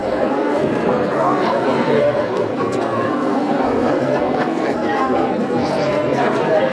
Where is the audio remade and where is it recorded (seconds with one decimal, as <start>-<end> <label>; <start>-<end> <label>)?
0.0-6.7 remade